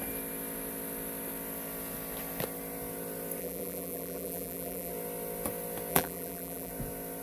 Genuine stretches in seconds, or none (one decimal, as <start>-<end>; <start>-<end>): 0.0-3.4; 4.9-5.9; 6.7-7.2